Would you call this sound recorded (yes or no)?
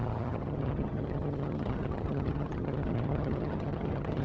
no